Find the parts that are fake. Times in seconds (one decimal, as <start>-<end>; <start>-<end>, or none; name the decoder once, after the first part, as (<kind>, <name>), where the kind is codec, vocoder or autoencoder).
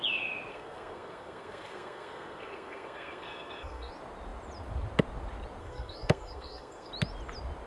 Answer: 0.5-3.9 (codec, SNAC); 5.6-6.9